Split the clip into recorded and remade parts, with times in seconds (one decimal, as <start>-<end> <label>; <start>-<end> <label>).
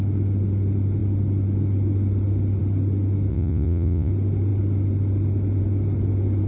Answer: 0.0-3.3 recorded; 3.3-4.1 remade; 4.1-6.5 recorded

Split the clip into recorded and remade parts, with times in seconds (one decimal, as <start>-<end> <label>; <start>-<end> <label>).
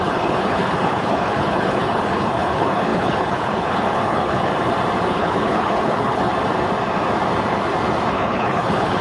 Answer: 0.0-4.5 remade; 4.5-5.1 recorded; 5.1-6.3 remade; 6.3-8.1 recorded; 8.1-9.0 remade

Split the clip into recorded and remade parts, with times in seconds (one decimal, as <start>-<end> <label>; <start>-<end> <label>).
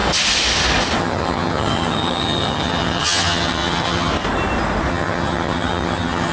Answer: 0.0-1.0 recorded; 1.0-4.1 remade; 4.1-4.9 recorded; 4.9-6.3 remade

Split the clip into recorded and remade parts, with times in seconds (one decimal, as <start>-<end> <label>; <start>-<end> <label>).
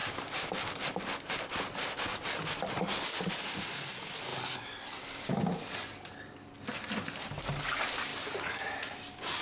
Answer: 0.0-4.3 recorded; 4.3-5.4 remade; 5.4-8.1 recorded; 8.1-9.4 remade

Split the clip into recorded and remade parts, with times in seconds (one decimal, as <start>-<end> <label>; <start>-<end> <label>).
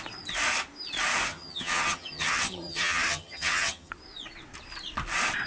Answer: 0.0-1.3 recorded; 1.3-3.9 remade; 3.9-5.5 recorded